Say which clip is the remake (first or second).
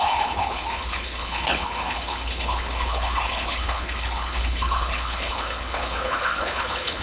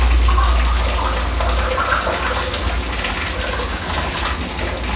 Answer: first